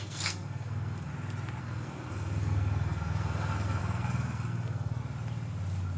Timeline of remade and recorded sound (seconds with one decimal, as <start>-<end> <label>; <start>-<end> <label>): 0.0-1.1 remade; 1.1-1.6 recorded; 1.6-5.0 remade; 5.0-6.0 recorded